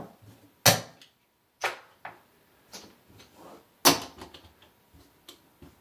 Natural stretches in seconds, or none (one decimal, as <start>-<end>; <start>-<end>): 0.0-5.8